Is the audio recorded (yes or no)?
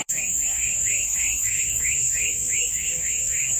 no